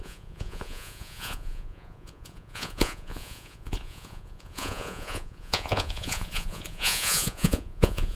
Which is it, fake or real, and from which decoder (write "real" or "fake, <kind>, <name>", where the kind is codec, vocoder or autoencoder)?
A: fake, vocoder, Vocos